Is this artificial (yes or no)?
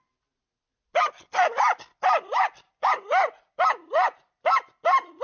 no